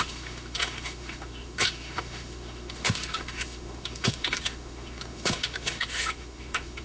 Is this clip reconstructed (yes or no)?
yes